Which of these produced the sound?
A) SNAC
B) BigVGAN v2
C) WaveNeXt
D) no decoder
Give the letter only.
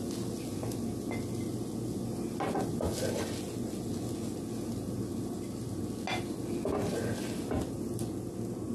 D